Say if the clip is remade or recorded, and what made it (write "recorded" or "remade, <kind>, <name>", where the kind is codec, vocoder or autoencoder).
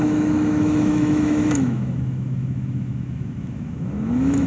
remade, autoencoder, DAC-VAE